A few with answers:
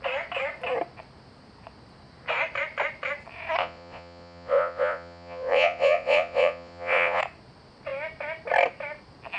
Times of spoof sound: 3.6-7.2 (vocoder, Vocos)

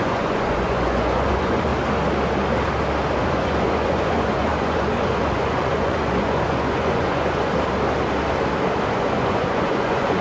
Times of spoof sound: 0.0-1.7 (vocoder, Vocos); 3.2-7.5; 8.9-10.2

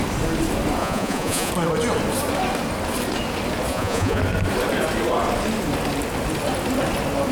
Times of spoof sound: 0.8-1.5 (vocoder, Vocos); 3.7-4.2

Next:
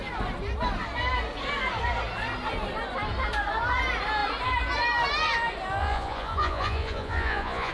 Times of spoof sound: 5.8-7.7 (vocoder, Vocos)

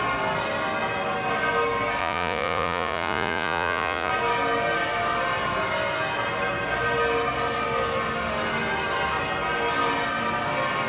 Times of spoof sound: 2.0-4.1 (vocoder, Vocos)

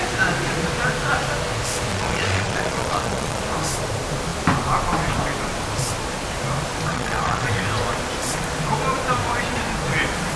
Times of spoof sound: 1.9-3.4 (vocoder, Vocos); 6.9-7.5

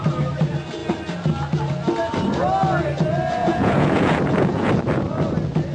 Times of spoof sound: 3.4-4.7 (vocoder, Vocos)

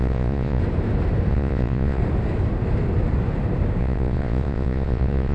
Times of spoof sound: 0.0-0.6 (vocoder, Vocos); 1.3-2.0; 3.8-5.3